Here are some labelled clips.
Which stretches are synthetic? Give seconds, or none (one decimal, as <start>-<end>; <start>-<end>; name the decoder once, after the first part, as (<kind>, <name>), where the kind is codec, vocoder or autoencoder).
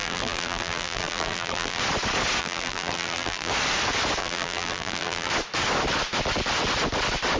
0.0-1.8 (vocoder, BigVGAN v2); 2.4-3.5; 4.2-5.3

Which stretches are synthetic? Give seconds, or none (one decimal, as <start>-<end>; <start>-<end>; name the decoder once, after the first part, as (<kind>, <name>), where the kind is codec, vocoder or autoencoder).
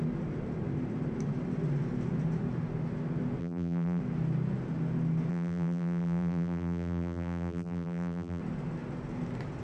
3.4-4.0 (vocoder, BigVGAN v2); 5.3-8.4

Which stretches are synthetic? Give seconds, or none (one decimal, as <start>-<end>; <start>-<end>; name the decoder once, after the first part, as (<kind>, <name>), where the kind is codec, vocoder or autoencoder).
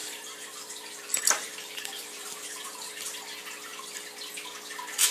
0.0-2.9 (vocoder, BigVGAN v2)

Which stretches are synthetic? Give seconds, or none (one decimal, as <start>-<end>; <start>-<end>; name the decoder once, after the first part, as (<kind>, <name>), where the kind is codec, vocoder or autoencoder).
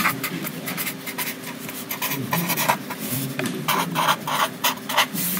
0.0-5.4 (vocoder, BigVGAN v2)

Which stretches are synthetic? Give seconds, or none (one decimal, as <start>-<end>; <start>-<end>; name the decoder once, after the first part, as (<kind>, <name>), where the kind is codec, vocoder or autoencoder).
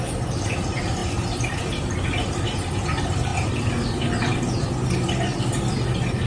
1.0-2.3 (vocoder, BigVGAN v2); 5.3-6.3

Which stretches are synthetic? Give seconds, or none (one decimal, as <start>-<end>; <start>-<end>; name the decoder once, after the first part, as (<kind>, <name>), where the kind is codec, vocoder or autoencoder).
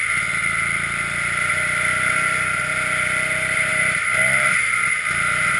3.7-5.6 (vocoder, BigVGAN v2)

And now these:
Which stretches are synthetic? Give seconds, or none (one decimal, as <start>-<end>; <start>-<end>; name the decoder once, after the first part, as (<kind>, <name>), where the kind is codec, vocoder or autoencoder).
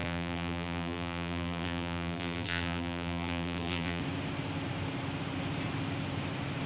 0.0-4.0 (vocoder, BigVGAN v2)